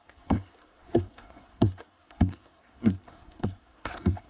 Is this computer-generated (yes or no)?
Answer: yes